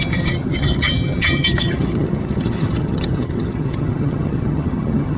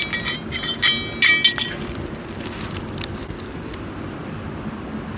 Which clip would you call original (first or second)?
second